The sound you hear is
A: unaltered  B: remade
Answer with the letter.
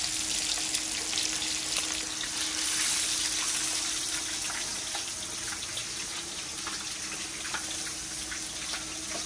A